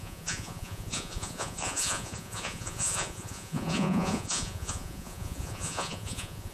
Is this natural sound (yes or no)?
no